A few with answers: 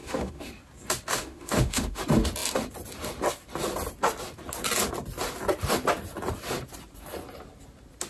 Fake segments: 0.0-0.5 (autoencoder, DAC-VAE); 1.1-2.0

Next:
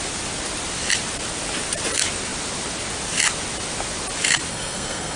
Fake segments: 4.5-5.2 (codec, SNAC)

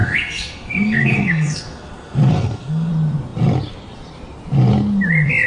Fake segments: 0.0-2.9 (codec, SNAC)

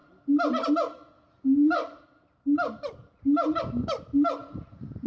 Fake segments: 4.4-5.1 (vocoder, Vocos)